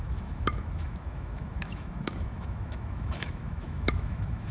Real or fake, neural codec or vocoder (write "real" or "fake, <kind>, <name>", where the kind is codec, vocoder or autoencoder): fake, autoencoder, DAC-VAE